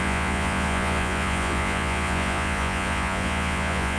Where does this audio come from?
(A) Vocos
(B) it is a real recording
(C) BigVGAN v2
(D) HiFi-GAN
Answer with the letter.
A